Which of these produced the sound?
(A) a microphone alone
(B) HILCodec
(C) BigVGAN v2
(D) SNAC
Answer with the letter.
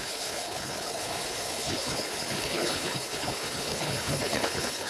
B